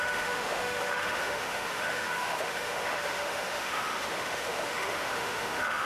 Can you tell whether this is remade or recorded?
remade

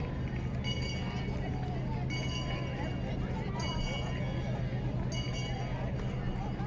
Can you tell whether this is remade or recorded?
recorded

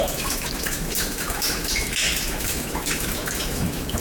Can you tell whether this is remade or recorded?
remade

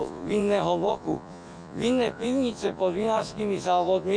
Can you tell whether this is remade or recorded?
remade